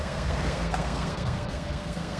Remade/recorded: remade